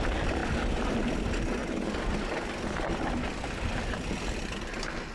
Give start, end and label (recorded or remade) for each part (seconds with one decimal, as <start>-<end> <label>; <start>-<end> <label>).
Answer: 0.0-5.1 recorded